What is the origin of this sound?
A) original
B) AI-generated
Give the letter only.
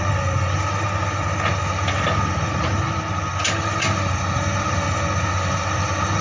A